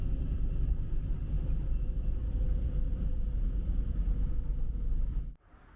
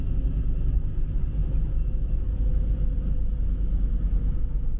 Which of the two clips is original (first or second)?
second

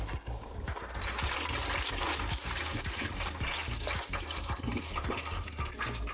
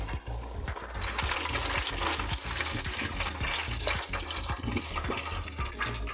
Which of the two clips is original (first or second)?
second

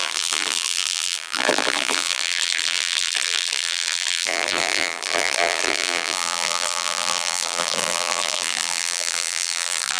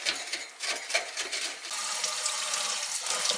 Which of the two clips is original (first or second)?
second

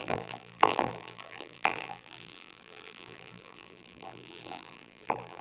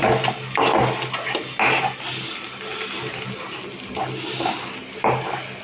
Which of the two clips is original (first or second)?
second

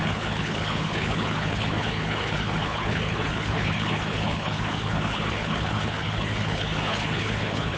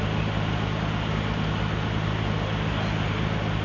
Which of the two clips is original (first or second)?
second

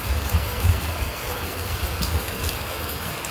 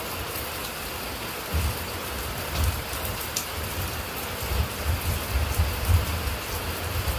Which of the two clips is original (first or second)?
second